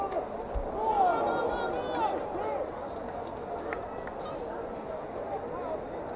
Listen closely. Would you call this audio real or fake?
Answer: real